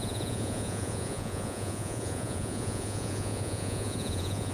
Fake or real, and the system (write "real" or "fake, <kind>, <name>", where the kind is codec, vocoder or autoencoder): fake, vocoder, Vocos